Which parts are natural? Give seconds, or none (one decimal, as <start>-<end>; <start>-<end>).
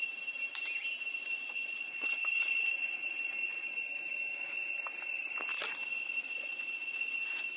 0.0-1.3; 4.6-6.3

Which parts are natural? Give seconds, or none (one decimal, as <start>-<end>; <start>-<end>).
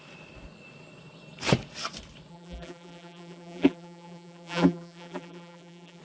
0.0-2.3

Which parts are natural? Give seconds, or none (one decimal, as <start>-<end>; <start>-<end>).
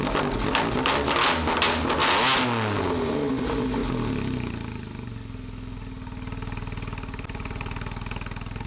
0.0-8.7